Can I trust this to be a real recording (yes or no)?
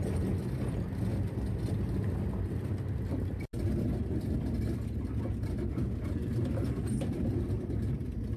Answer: yes